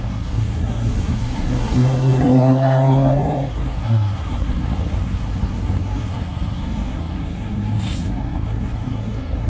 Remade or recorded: remade